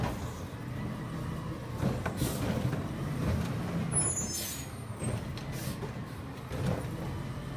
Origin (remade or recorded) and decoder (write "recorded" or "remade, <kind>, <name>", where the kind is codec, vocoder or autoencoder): recorded